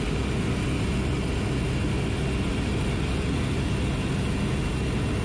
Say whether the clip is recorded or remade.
recorded